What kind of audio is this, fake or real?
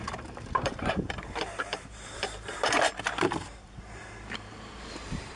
fake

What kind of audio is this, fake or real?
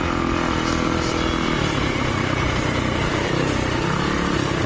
fake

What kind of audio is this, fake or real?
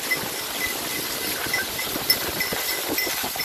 real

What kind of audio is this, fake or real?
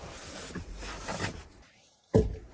fake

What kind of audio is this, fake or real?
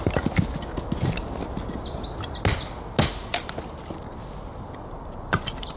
real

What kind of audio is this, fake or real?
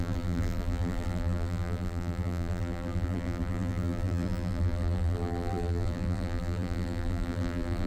fake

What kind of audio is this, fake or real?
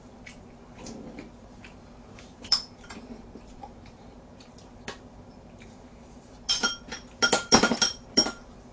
fake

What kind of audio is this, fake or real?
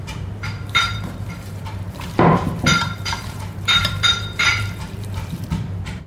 fake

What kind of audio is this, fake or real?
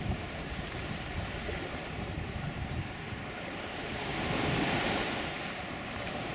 fake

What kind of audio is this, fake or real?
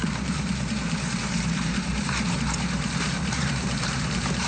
fake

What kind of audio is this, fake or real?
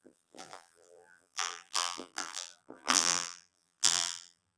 fake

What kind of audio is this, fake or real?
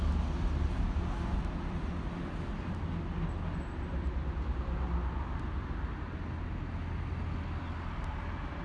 real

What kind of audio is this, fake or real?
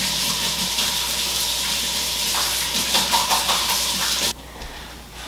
fake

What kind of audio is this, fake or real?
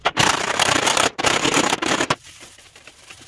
fake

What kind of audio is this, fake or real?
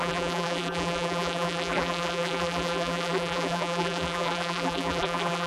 fake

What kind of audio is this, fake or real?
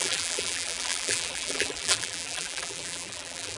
fake